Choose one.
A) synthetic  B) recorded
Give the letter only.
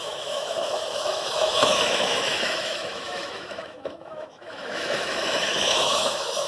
A